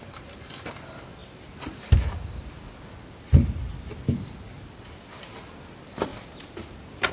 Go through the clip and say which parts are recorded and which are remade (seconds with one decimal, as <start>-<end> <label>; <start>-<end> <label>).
0.0-7.1 recorded